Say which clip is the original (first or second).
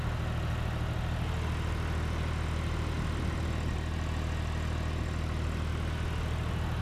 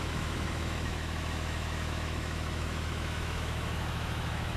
first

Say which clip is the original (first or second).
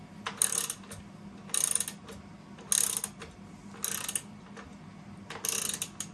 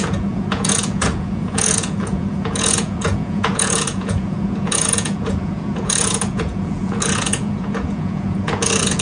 first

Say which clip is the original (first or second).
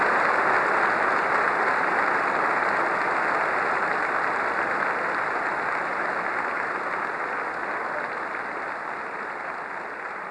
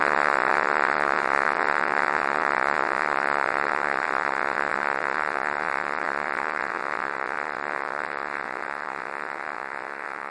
first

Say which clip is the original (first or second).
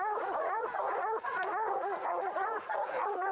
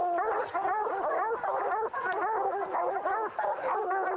second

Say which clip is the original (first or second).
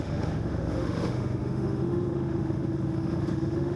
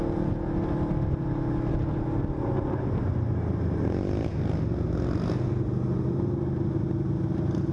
second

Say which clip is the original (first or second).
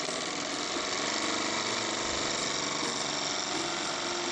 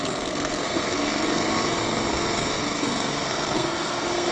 first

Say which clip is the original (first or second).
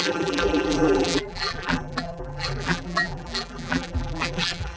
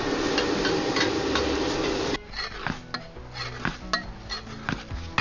second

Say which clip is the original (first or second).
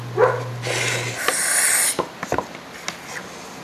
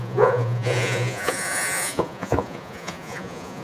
first